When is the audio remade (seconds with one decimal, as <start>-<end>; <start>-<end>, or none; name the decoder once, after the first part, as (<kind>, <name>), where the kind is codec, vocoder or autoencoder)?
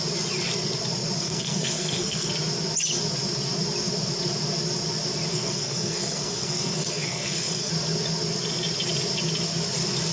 1.2-2.3 (codec, SNAC); 5.3-7.7